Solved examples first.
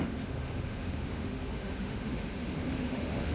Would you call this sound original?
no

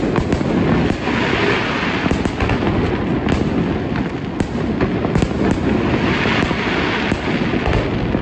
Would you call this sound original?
yes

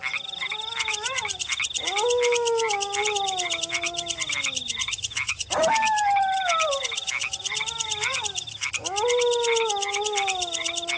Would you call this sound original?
yes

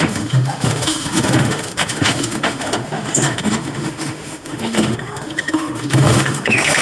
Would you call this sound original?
no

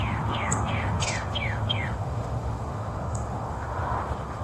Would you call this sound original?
no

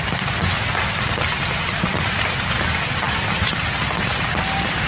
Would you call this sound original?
yes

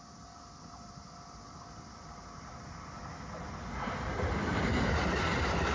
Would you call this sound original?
yes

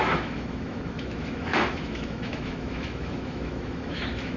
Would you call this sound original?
no